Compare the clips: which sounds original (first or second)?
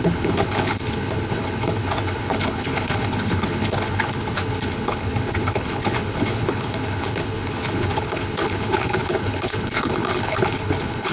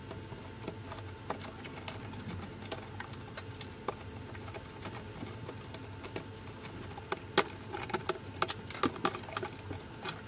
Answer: second